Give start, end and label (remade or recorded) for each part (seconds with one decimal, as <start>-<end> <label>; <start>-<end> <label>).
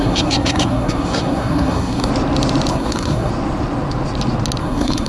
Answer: 0.0-2.1 remade; 2.1-2.7 recorded; 2.7-3.3 remade; 3.3-4.6 recorded; 4.6-5.1 remade